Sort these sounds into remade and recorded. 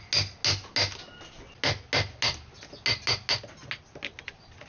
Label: recorded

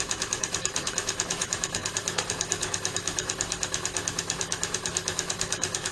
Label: remade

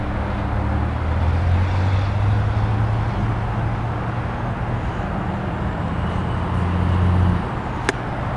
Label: recorded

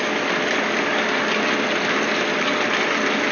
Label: recorded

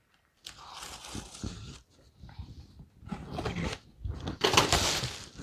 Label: recorded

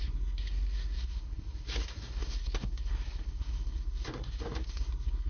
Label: remade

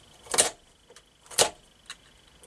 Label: recorded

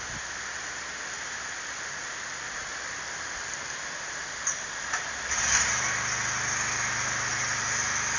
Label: recorded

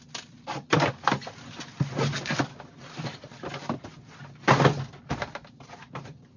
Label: recorded